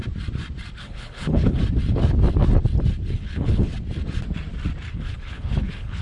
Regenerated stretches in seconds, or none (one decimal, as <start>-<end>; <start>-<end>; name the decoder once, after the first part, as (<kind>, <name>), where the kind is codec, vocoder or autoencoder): 0.8-1.6 (codec, HILCodec); 3.1-3.7; 4.9-6.0